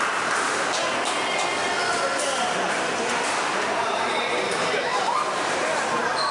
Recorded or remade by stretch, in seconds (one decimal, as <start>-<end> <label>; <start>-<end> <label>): 0.0-3.1 recorded; 3.1-6.3 remade